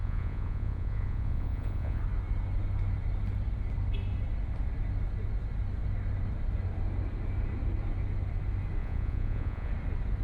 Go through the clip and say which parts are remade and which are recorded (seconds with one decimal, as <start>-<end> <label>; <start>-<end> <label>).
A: 0.0-2.0 remade; 2.0-8.8 recorded; 8.8-9.7 remade; 9.7-10.2 recorded